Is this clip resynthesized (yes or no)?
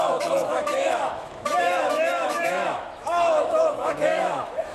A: yes